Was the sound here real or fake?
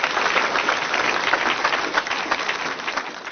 real